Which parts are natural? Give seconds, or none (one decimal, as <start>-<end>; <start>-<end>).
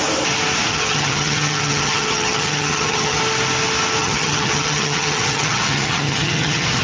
0.0-0.7; 3.2-4.0